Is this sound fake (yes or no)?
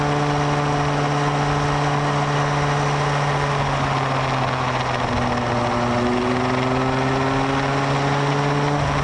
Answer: no